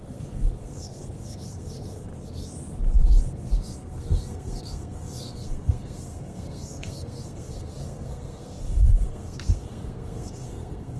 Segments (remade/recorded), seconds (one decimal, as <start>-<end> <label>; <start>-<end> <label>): 0.0-2.1 remade; 2.1-3.2 recorded; 3.2-11.0 remade